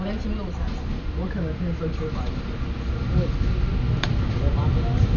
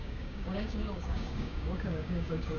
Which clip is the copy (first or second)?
second